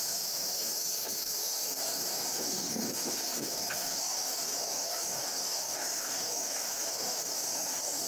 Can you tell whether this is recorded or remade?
remade